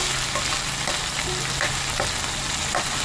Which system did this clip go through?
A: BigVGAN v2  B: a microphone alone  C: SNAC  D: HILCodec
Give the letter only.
B